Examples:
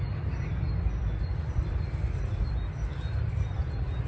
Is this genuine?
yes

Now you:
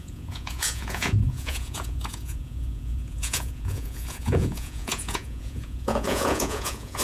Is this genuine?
no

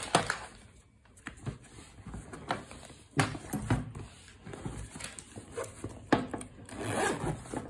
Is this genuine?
yes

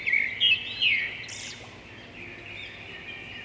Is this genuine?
yes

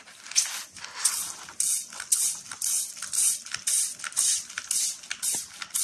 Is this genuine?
yes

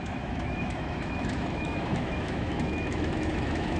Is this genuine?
no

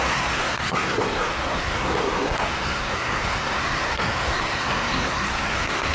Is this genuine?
no